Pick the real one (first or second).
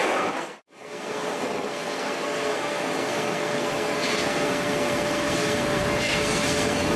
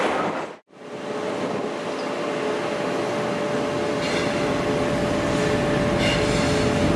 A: second